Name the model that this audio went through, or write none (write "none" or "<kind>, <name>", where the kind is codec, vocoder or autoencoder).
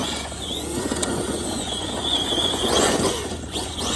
vocoder, Vocos